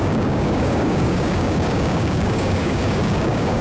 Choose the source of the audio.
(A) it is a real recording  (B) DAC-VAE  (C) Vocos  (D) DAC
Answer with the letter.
D